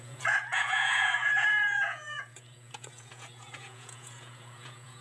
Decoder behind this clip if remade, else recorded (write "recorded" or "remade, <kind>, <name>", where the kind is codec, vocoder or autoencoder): remade, vocoder, Vocos